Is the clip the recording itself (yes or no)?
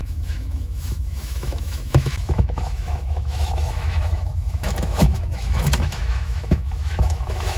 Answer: no